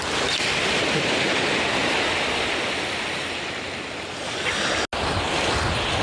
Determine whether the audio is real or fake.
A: real